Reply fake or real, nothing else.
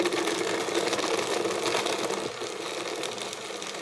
real